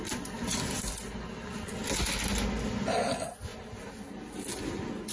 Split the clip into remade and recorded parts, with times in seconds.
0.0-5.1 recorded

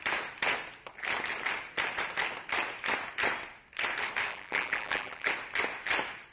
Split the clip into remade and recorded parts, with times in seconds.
0.0-4.3 recorded; 4.3-5.3 remade; 5.3-6.3 recorded

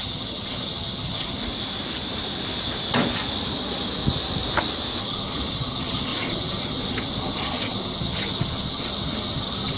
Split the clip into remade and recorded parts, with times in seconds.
0.0-1.4 remade; 1.4-5.0 recorded; 5.0-9.8 remade

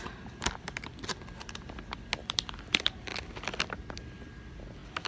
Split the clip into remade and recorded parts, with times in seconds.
0.0-5.1 recorded

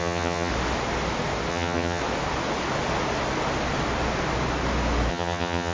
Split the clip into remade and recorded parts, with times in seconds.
0.0-0.5 remade; 0.5-1.5 recorded; 1.5-2.0 remade; 2.0-5.1 recorded; 5.1-5.7 remade

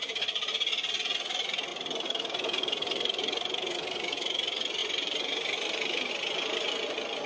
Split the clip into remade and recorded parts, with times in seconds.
0.0-1.7 recorded; 1.7-3.2 remade; 3.2-4.8 recorded; 4.8-6.1 remade; 6.1-7.3 recorded